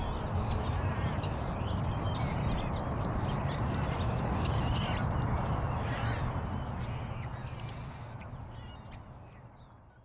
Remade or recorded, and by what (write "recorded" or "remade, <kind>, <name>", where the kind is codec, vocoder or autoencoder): recorded